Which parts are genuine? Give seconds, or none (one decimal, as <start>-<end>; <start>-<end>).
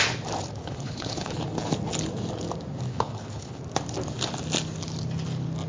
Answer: 0.0-0.6; 1.3-2.9; 3.6-5.7